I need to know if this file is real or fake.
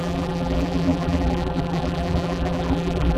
fake